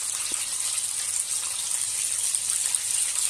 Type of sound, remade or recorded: recorded